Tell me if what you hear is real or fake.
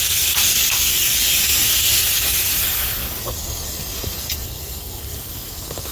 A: fake